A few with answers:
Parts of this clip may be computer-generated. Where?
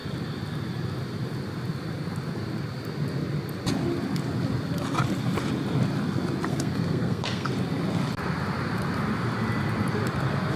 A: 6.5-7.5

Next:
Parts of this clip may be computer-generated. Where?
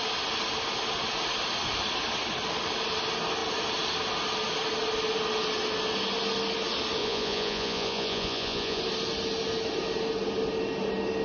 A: 7.0-8.8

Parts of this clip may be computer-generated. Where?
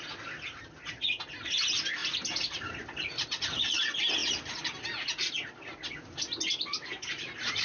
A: none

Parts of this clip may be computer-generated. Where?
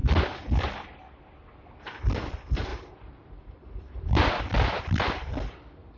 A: 2.7-4.3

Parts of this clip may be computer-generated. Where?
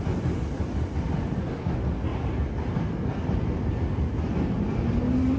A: none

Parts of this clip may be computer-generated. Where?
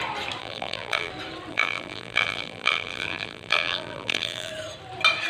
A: 0.4-1.1; 1.5-4.5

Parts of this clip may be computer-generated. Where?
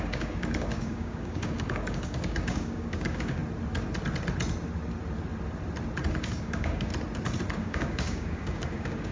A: 0.0-3.4; 6.1-6.9; 7.5-9.1